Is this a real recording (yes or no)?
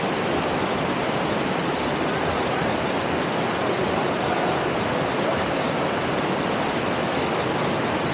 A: yes